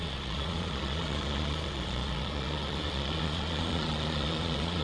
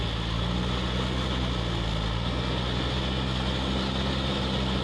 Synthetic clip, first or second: first